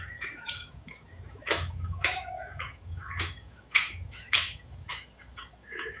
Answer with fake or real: fake